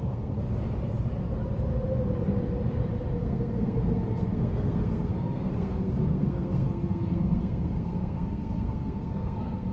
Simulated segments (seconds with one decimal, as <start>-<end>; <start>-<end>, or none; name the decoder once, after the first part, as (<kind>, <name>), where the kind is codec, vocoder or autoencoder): 0.0-0.4 (codec, SNAC); 3.2-9.7